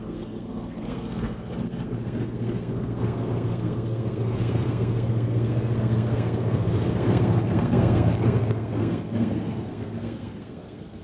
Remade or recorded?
remade